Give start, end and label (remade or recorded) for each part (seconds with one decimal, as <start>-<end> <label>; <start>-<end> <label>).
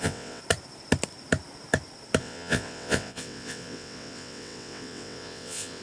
0.0-0.4 remade; 0.4-2.2 recorded; 2.2-5.8 remade